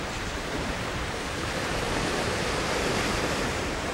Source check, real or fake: fake